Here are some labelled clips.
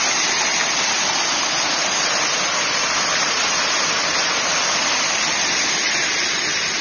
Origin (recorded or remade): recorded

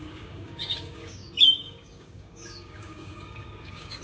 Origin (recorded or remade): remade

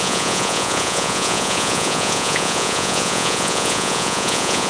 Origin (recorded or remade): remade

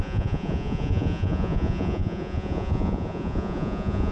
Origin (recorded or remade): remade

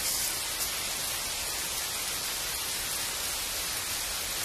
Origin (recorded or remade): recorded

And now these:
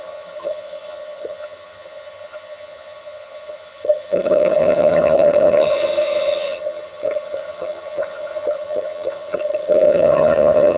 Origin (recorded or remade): remade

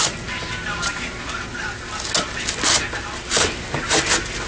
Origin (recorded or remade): recorded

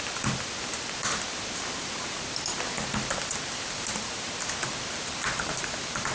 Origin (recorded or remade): remade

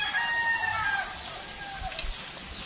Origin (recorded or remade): recorded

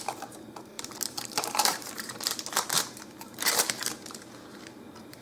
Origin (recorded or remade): remade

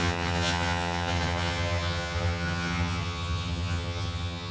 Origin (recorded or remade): remade